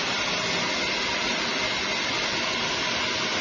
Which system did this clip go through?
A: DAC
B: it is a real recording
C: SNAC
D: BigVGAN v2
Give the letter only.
B